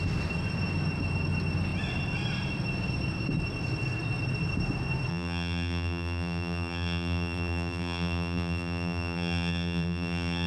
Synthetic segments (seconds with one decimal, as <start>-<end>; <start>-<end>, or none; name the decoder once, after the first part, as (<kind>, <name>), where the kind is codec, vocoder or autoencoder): 5.1-10.5 (vocoder, BigVGAN v2)